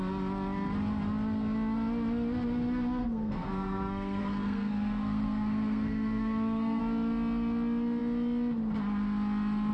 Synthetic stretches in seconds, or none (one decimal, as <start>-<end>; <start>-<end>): 3.0-6.8